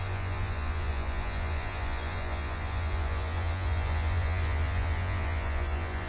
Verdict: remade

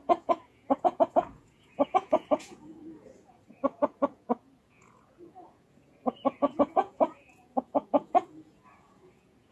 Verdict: remade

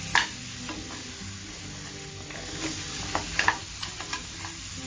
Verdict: recorded